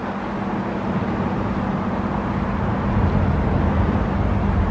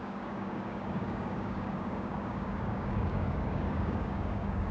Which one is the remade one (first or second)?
second